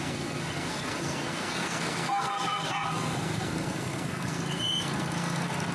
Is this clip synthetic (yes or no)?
yes